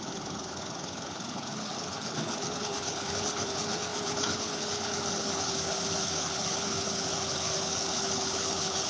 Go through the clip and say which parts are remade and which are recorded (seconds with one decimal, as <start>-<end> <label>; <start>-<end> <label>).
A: 0.0-8.9 remade